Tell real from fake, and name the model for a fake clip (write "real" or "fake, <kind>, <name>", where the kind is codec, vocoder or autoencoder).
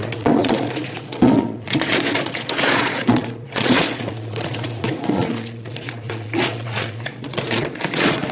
fake, vocoder, Vocos